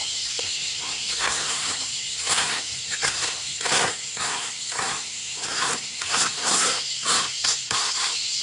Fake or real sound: fake